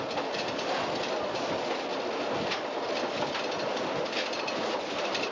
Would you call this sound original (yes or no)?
yes